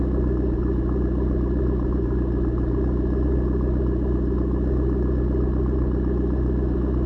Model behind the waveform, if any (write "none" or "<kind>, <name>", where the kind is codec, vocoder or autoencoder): none